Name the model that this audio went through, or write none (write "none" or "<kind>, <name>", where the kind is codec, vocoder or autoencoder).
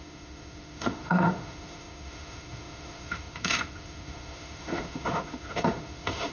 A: autoencoder, DAC-VAE